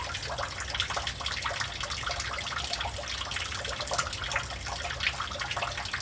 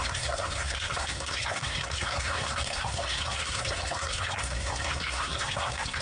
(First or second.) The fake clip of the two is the second